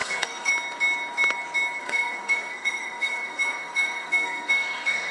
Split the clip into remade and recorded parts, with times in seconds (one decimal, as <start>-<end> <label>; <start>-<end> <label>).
0.0-0.5 remade; 0.5-1.8 recorded; 1.8-5.1 remade